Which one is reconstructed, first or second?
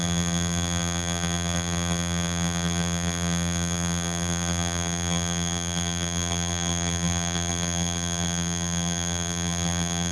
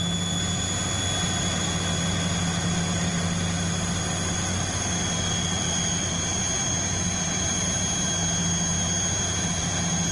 first